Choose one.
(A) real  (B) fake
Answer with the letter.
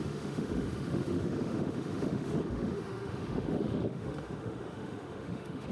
B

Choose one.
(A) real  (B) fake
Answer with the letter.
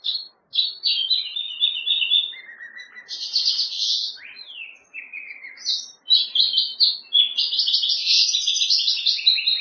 A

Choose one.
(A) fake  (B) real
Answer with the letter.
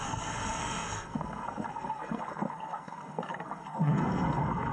A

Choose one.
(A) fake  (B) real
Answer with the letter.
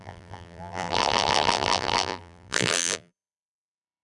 A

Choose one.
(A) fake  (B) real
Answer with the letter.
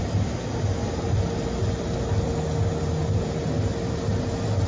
B